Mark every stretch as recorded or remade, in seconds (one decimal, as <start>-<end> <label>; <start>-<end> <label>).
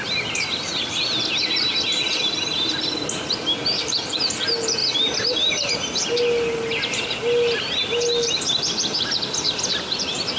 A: 0.0-10.4 recorded